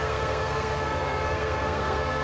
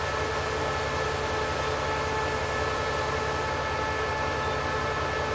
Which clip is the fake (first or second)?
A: first